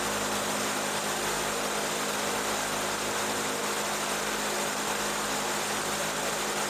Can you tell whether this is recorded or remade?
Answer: recorded